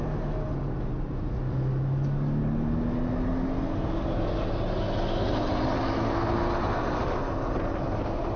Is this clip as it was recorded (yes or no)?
yes